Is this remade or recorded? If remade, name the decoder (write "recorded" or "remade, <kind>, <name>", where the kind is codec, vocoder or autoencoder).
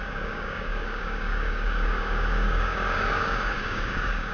remade, codec, DAC